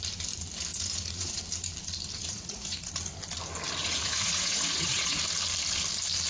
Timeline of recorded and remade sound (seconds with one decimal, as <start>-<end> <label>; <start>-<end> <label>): 0.0-0.7 recorded; 0.7-1.4 remade; 1.4-2.2 recorded; 2.2-2.9 remade; 2.9-3.8 recorded; 3.8-5.2 remade; 5.2-6.3 recorded